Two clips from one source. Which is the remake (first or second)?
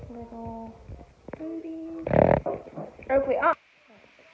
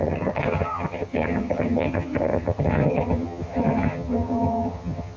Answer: second